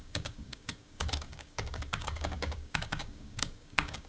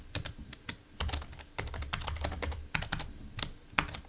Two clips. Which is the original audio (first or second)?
second